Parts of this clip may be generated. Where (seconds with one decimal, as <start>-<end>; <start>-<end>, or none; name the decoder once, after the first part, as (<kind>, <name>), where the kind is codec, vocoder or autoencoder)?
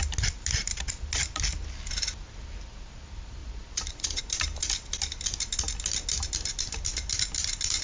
3.4-4.2 (vocoder, Vocos)